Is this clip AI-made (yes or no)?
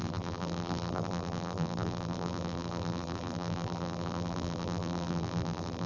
yes